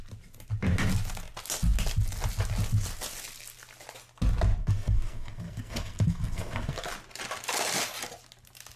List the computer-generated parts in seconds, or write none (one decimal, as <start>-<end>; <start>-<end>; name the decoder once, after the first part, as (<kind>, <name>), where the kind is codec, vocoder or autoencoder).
4.6-6.8 (codec, SNAC)